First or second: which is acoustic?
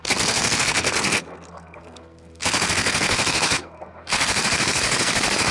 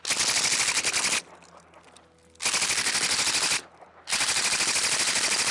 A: second